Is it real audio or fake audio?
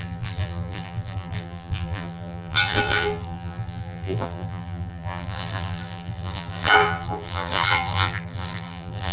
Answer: fake